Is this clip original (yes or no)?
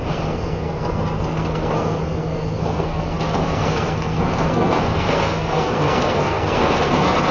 no